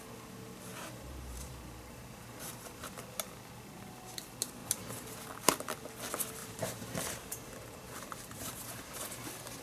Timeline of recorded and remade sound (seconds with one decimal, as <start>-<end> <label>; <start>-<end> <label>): 0.0-0.7 recorded; 0.7-2.9 remade; 2.9-4.6 recorded; 4.6-5.1 remade; 5.1-6.4 recorded; 6.4-9.1 remade; 9.1-9.6 recorded